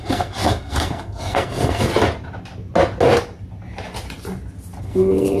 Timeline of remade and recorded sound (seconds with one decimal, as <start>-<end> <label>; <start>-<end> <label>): 0.0-1.9 remade; 1.9-4.8 recorded; 4.8-5.4 remade